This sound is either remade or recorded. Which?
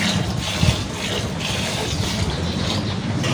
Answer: recorded